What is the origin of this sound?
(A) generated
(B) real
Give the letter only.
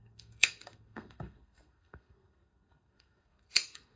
A